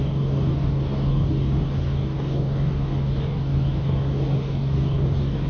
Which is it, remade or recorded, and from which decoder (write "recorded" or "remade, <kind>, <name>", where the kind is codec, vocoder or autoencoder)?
remade, codec, DAC